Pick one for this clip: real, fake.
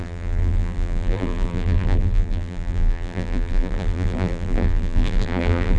fake